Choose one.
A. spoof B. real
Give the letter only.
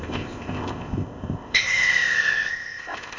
A